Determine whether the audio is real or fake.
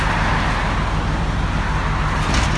real